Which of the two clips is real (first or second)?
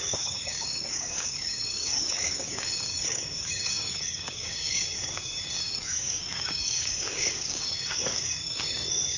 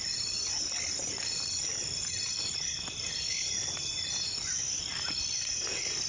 second